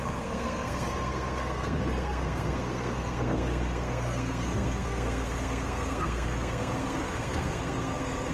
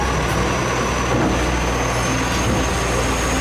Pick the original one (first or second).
second